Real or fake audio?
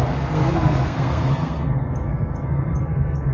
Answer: fake